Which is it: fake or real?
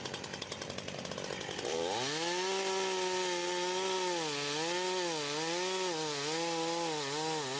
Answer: real